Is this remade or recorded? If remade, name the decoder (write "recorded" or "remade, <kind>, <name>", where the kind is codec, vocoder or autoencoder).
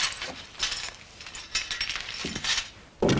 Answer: recorded